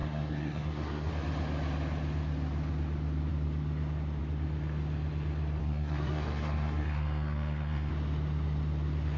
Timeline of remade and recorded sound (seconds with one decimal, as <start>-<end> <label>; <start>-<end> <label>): 0.0-1.1 remade; 1.1-5.6 recorded; 5.6-7.9 remade; 7.9-9.2 recorded